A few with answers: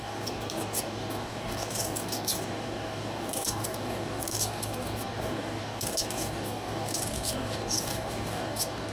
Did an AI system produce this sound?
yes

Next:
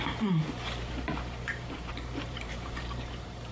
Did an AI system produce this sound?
yes